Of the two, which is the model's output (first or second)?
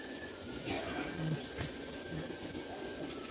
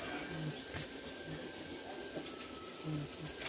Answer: first